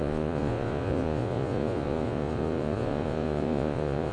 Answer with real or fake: fake